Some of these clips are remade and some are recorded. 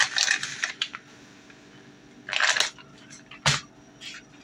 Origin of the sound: recorded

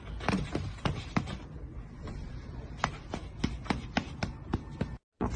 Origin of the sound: recorded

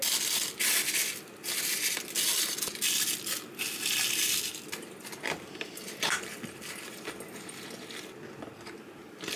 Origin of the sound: recorded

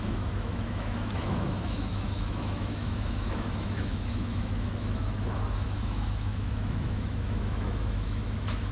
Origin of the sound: remade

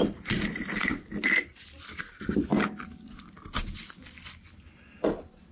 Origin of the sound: recorded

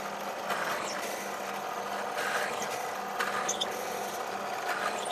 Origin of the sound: recorded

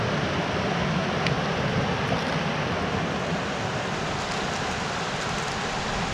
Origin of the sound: recorded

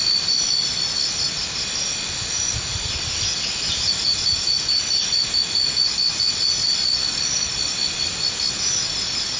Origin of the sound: recorded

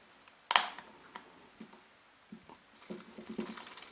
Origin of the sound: recorded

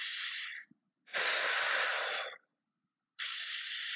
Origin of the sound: recorded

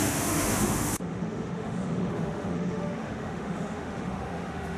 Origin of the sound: remade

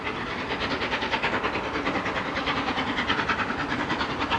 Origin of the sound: recorded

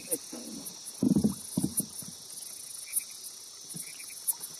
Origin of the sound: recorded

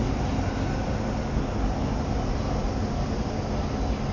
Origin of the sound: recorded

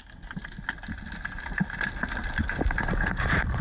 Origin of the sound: recorded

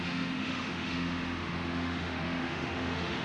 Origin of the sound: remade